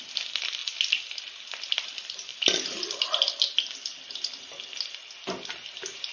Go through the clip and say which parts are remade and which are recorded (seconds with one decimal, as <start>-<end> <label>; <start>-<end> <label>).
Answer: 0.0-6.1 recorded